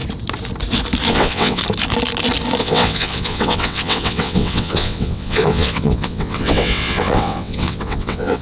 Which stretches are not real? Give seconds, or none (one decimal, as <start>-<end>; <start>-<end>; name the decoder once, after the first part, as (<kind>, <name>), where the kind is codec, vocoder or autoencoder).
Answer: 1.1-1.6 (vocoder, WaveNeXt); 2.6-8.4